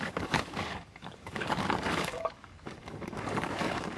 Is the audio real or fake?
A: fake